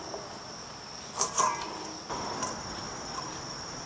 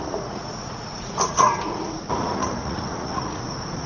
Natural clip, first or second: first